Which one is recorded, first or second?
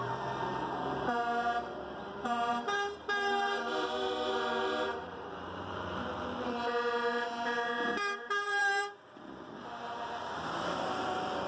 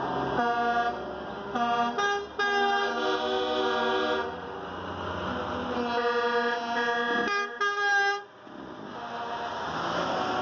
second